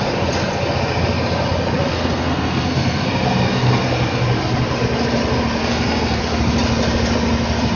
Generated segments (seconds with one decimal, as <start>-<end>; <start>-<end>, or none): 1.9-4.2; 5.6-6.2